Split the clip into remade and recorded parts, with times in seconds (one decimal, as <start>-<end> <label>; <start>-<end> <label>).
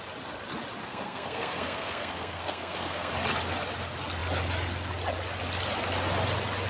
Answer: 0.0-0.8 recorded; 0.8-3.1 remade; 3.1-6.7 recorded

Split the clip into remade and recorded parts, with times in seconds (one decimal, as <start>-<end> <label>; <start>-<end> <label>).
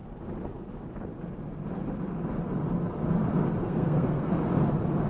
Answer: 0.0-3.6 recorded; 3.6-4.4 remade; 4.4-5.1 recorded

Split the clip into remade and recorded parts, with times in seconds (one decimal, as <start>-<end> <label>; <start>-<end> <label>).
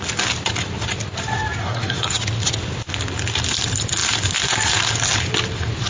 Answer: 0.0-1.6 recorded; 1.6-2.2 remade; 2.2-5.9 recorded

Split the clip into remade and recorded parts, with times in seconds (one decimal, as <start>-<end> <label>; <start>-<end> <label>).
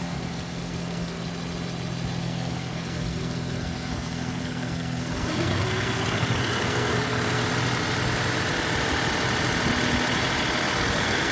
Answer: 0.0-1.2 remade; 1.2-2.2 recorded; 2.2-7.4 remade; 7.4-10.8 recorded; 10.8-11.3 remade